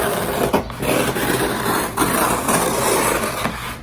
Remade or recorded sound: remade